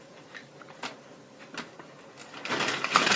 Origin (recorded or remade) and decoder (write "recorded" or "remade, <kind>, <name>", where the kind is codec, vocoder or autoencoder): recorded